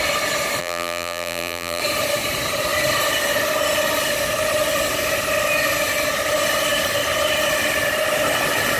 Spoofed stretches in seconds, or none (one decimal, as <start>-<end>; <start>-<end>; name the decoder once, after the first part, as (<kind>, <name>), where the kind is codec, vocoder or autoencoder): 0.6-1.8 (vocoder, BigVGAN v2)